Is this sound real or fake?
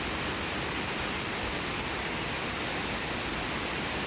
real